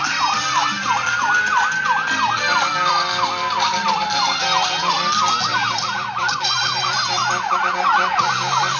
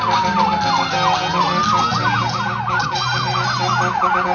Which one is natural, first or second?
second